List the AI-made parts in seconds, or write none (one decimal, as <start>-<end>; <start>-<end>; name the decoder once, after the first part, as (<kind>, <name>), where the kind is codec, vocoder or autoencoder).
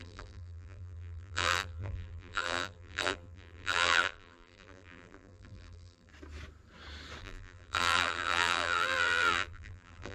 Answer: 0.0-6.1 (vocoder, BigVGAN v2); 7.2-10.1